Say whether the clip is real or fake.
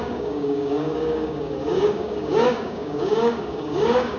fake